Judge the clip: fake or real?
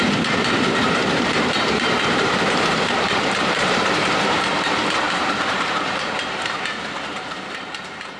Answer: fake